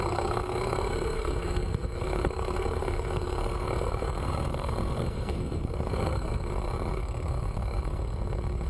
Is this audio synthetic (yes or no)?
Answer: yes